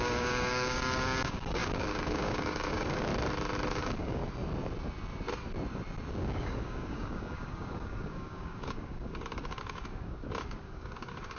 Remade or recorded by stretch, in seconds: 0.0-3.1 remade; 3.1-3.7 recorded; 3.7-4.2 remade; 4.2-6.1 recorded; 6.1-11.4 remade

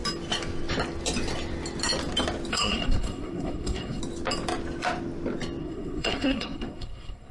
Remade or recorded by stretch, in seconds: 0.0-2.5 recorded; 2.5-4.0 remade; 4.0-5.6 recorded; 5.6-7.3 remade

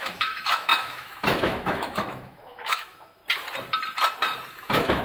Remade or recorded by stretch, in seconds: 0.0-3.2 remade; 3.2-4.5 recorded; 4.5-5.0 remade

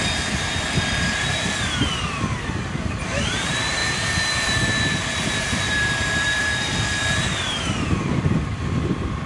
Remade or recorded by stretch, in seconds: 0.0-9.3 remade

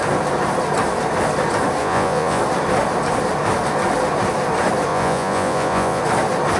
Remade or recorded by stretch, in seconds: 0.0-1.8 recorded; 1.8-2.4 remade; 2.4-4.9 recorded; 4.9-6.0 remade; 6.0-6.6 recorded

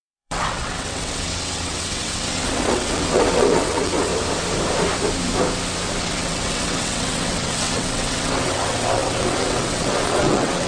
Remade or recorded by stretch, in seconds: 0.0-4.1 remade; 4.1-6.0 recorded; 6.0-10.7 remade

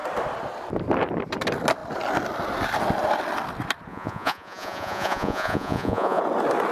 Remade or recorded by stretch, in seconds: 0.0-3.9 recorded; 3.9-6.2 remade; 6.2-6.7 recorded